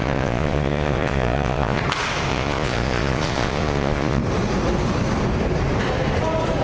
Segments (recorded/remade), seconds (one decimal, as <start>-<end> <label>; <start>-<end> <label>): 0.0-1.8 remade; 1.8-2.3 recorded; 2.3-4.2 remade; 4.2-6.6 recorded